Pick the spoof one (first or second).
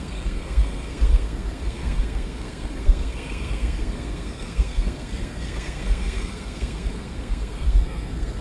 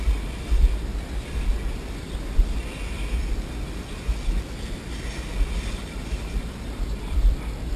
first